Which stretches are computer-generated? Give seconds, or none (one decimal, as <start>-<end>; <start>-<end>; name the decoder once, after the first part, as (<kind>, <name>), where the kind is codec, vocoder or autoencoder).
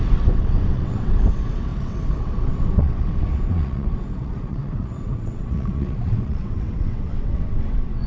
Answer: 0.0-8.1 (vocoder, WaveNeXt)